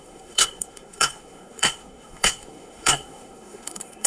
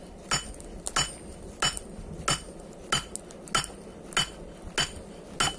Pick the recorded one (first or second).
second